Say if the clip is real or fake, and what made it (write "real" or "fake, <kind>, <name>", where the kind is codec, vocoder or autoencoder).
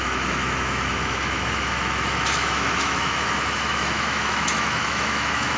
fake, autoencoder, DAC-VAE